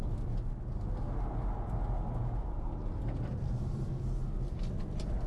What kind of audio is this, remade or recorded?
recorded